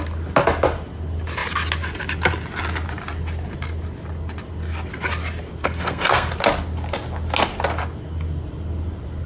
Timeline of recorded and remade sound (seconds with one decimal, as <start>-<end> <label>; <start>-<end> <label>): 0.0-5.6 recorded; 5.6-6.3 remade; 6.3-9.3 recorded